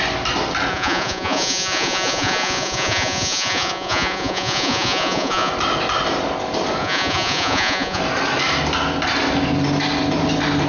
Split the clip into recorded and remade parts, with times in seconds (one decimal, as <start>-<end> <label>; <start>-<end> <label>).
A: 0.0-0.7 recorded; 0.7-5.5 remade; 5.5-6.8 recorded; 6.8-8.0 remade; 8.0-10.7 recorded